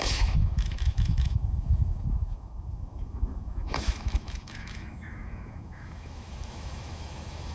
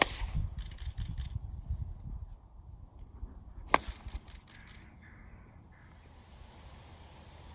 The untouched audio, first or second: second